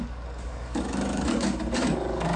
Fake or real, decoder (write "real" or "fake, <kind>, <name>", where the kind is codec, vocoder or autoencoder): fake, codec, DAC